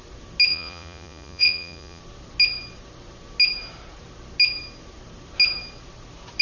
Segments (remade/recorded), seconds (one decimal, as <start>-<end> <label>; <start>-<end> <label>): 0.0-0.5 recorded; 0.5-2.0 remade; 2.0-6.4 recorded